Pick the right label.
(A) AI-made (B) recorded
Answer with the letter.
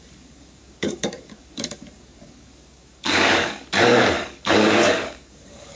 A